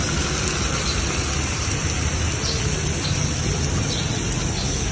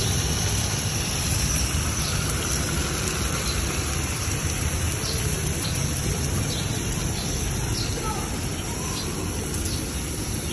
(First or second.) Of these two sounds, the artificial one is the second